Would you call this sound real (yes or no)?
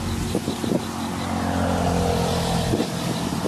yes